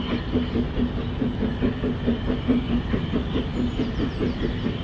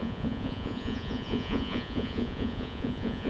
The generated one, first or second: second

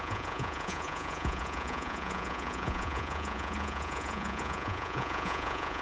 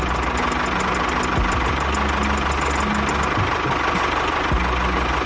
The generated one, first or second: first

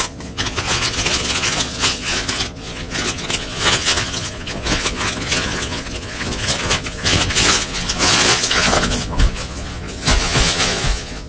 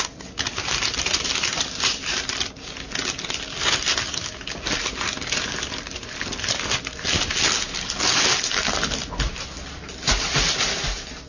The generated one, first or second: first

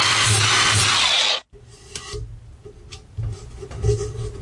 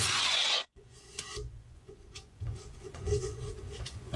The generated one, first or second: second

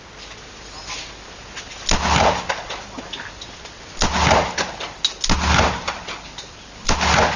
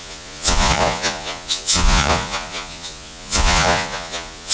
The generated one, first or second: second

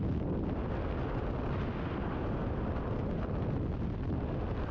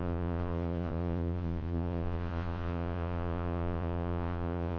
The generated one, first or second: second